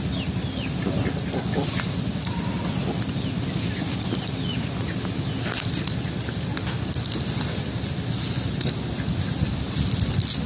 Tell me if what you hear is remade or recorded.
recorded